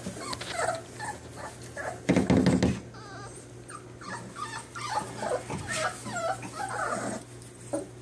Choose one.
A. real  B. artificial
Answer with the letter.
A